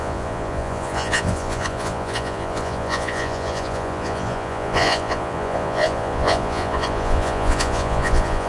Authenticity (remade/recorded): remade